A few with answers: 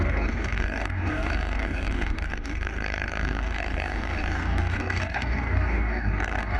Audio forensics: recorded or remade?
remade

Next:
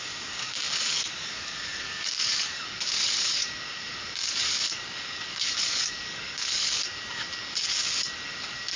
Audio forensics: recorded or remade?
remade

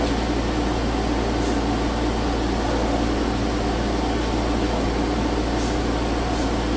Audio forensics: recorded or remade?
recorded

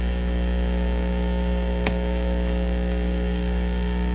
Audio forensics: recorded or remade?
remade